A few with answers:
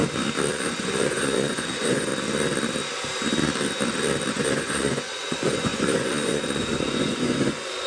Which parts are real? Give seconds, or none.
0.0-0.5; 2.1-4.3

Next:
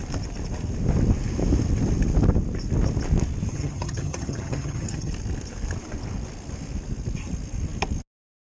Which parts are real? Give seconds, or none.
0.0-3.5; 5.1-8.6